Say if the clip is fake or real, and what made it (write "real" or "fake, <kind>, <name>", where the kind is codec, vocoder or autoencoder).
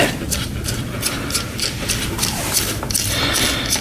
real